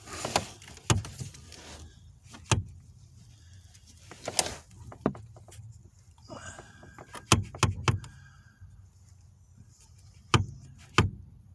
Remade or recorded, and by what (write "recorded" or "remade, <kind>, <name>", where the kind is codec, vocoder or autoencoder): recorded